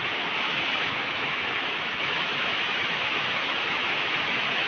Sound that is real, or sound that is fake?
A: fake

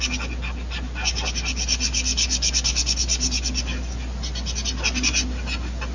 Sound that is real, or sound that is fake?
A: real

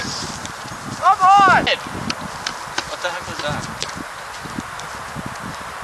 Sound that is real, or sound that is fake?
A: real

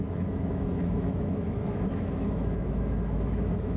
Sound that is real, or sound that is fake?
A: fake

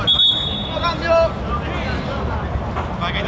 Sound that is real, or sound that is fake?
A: real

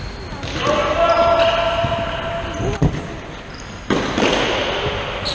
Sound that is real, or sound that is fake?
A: real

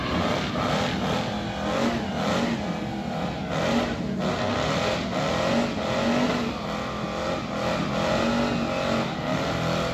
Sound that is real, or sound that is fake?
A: real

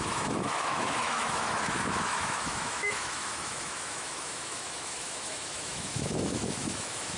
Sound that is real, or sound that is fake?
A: fake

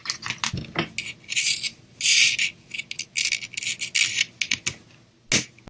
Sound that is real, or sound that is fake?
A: real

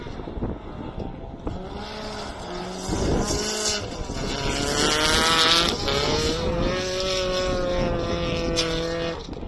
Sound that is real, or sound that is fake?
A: real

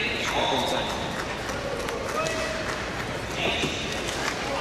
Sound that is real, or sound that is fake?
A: real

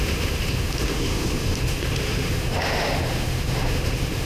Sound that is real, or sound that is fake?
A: fake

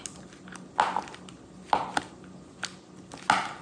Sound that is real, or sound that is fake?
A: real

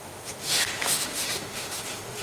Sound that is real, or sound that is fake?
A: fake